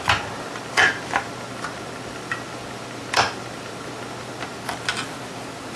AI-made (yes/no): no